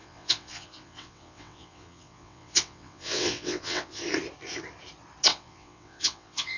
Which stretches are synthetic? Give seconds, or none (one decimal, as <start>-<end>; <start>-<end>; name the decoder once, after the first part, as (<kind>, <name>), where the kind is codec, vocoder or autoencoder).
0.0-4.0 (vocoder, WaveNeXt); 5.3-6.6